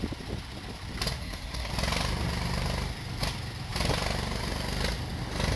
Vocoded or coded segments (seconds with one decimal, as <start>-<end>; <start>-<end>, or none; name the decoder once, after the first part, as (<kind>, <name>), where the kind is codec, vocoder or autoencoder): 1.2-1.7 (codec, SNAC)